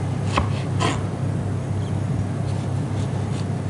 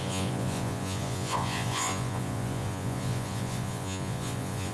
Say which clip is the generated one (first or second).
second